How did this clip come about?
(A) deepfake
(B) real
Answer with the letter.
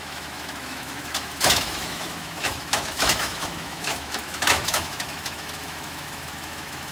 A